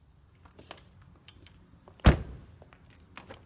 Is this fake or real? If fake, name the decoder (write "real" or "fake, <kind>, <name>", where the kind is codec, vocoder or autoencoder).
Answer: real